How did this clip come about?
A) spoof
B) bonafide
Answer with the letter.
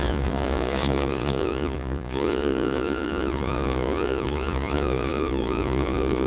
A